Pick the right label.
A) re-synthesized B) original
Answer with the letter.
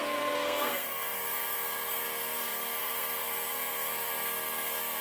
A